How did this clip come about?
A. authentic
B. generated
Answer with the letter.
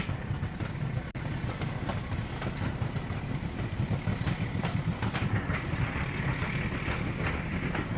A